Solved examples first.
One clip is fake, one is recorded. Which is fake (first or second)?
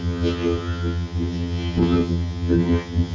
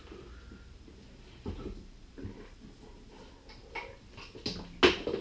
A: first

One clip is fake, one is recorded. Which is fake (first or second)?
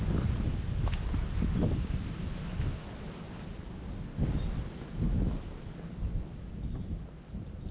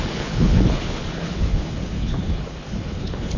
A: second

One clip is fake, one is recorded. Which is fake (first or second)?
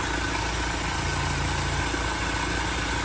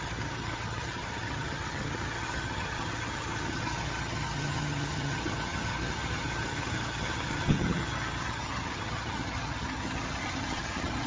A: second